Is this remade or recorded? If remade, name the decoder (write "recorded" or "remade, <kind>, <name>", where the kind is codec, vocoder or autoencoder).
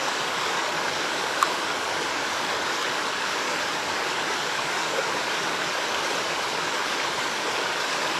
remade, codec, DAC